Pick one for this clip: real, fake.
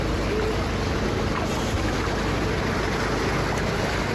real